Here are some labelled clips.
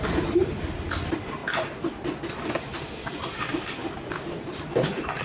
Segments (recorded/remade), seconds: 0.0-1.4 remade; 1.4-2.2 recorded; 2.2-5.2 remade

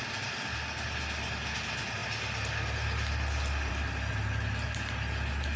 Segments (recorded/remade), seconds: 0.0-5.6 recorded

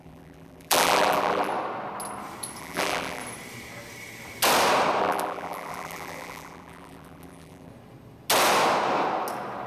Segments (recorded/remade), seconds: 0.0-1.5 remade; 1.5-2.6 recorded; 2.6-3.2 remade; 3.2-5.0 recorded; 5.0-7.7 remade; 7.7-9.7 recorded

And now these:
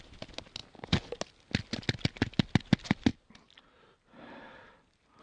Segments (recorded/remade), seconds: 0.0-0.6 recorded; 0.6-1.2 remade; 1.2-3.1 recorded; 3.1-5.2 remade